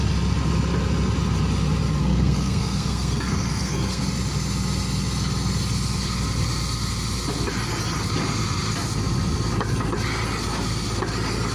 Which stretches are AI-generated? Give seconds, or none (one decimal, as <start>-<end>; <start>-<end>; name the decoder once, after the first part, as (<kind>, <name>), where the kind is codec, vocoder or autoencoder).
2.0-4.0 (codec, SNAC)